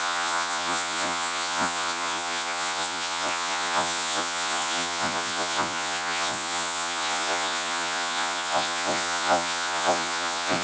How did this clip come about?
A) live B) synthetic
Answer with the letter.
B